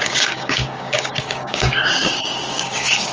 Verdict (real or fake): fake